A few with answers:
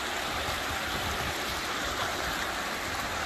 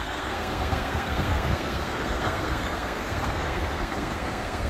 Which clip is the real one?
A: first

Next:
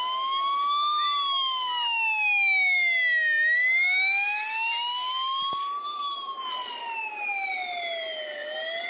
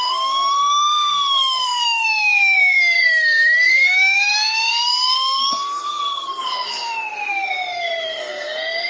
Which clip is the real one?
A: first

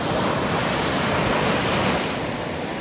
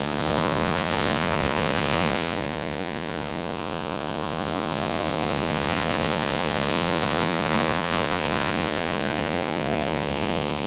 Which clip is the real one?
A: first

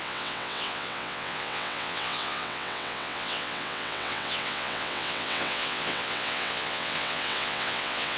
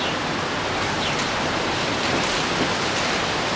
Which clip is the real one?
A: second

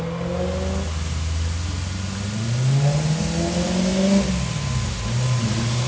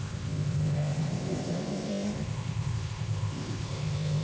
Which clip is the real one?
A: first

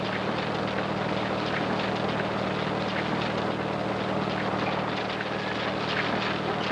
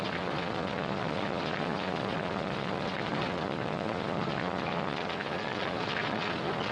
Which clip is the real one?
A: first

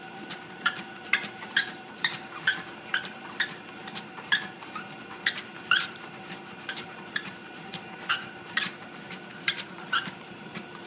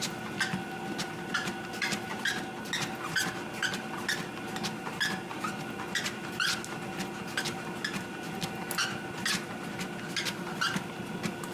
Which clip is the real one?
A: second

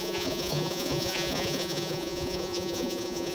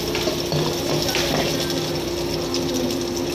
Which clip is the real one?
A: second